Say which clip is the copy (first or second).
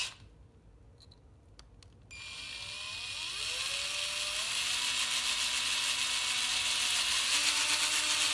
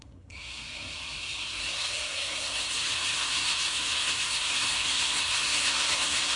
second